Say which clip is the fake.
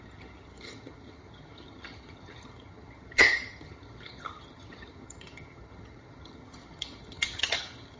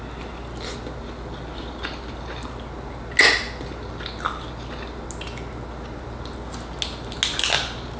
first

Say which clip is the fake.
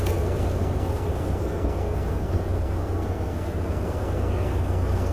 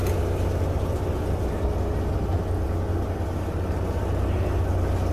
first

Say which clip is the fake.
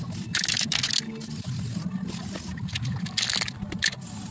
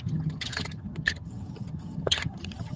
second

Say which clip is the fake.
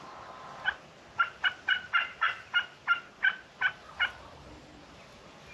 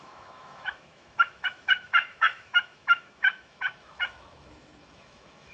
second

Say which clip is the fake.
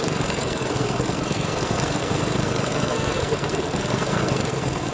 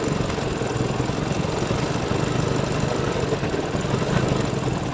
first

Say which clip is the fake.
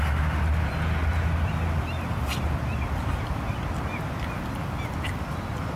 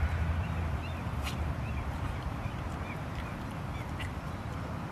second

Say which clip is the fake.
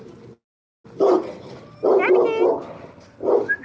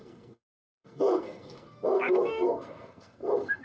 second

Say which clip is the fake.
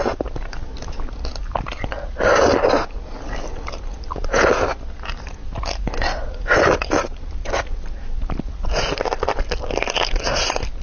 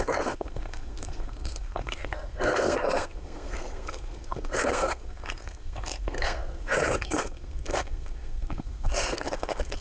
second